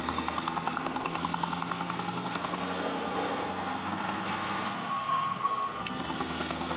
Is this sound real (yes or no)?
no